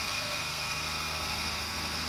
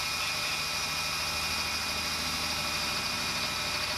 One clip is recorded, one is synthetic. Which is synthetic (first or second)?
first